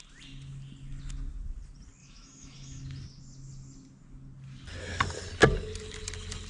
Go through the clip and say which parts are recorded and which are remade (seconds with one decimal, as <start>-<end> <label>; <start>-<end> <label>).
0.0-2.0 recorded; 2.0-2.8 remade; 2.8-6.5 recorded